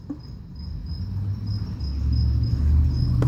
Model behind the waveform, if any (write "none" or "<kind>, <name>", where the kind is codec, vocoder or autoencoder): none